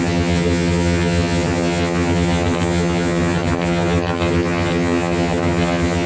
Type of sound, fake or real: fake